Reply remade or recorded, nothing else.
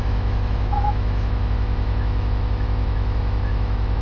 remade